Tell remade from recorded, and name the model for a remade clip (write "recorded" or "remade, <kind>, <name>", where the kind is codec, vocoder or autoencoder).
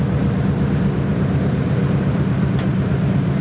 remade, vocoder, BigVGAN v2